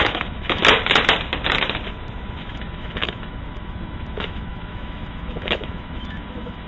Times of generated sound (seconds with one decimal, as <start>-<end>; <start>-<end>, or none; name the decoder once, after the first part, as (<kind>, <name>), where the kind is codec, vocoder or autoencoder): 0.0-0.6 (autoencoder, DAC-VAE); 2.4-6.7